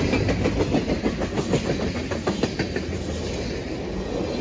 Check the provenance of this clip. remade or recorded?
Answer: recorded